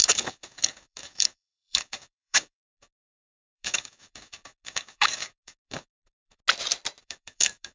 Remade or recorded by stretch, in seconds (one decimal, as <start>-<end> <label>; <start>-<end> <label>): 0.0-6.4 remade; 6.4-7.0 recorded; 7.0-7.7 remade